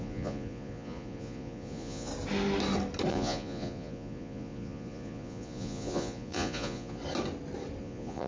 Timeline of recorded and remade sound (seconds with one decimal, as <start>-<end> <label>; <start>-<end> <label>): 0.0-2.1 remade; 2.1-3.1 recorded; 3.1-7.0 remade; 7.0-7.8 recorded; 7.8-8.3 remade